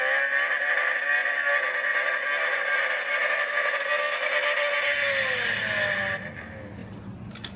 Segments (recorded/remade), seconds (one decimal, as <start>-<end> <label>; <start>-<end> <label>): 0.0-7.6 recorded